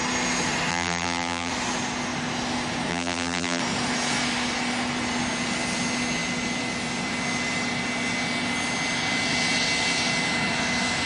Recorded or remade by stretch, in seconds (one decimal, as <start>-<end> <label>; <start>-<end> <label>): 0.0-0.7 recorded; 0.7-1.5 remade; 1.5-2.9 recorded; 2.9-3.6 remade; 3.6-11.1 recorded